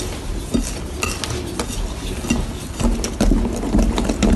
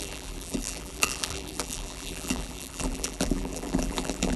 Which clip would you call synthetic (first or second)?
second